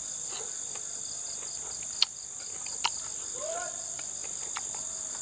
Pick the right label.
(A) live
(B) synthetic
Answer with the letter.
A